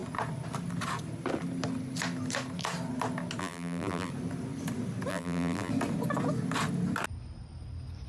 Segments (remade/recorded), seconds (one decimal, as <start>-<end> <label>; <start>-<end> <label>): 0.0-3.4 recorded; 3.4-4.1 remade; 4.1-5.1 recorded; 5.1-5.7 remade; 5.7-8.1 recorded